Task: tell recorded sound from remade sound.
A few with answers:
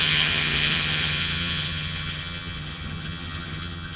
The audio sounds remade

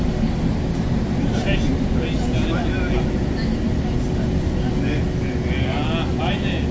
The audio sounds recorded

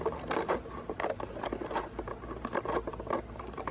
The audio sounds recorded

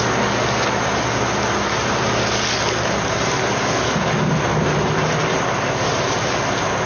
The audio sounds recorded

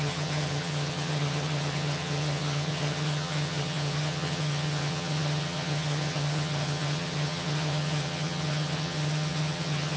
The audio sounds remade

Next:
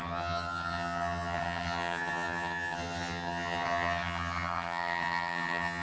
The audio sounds remade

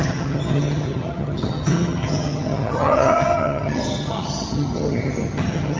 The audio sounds remade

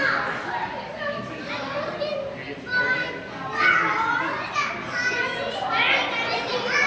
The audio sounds recorded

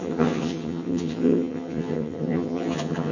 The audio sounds remade